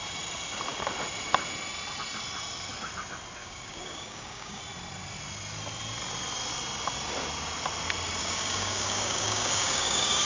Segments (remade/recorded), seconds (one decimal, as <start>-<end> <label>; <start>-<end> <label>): 0.0-3.4 recorded; 3.4-4.6 remade; 4.6-8.2 recorded; 8.2-10.2 remade